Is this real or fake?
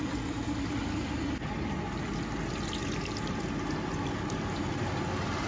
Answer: real